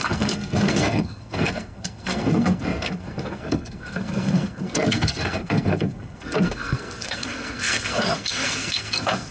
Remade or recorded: remade